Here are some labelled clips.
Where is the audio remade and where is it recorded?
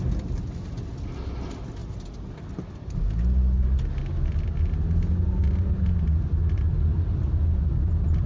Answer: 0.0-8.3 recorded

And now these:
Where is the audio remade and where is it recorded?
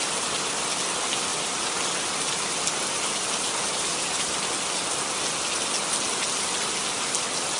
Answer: 0.0-7.6 recorded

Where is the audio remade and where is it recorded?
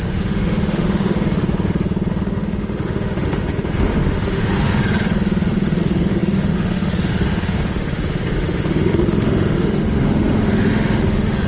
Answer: 0.0-1.4 remade; 1.4-2.1 recorded; 2.1-4.8 remade; 4.8-5.8 recorded; 5.8-11.5 remade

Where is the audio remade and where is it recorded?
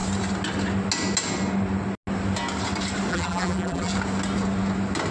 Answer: 0.0-3.1 recorded; 3.1-3.9 remade; 3.9-5.1 recorded